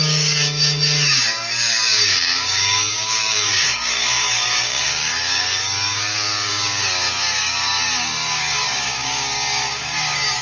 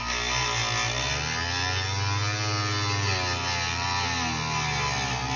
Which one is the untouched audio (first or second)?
second